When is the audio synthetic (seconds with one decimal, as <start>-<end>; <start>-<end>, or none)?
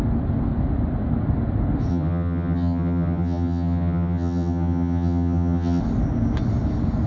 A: 1.9-5.8